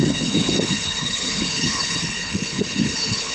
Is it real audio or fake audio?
fake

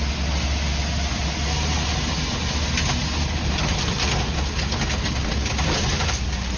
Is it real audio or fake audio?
real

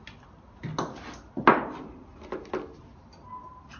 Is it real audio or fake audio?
real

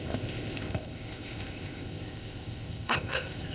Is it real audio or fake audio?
fake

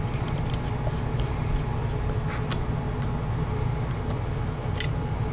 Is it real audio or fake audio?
real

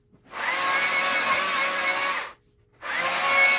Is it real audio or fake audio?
real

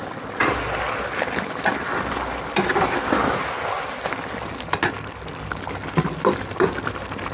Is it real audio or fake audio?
real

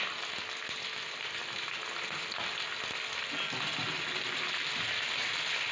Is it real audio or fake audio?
real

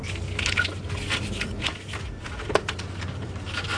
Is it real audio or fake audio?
real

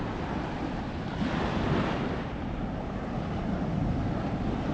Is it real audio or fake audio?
real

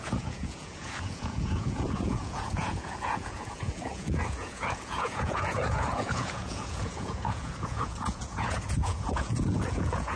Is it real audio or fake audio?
fake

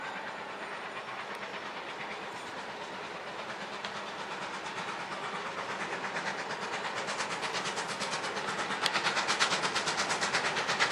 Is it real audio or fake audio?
real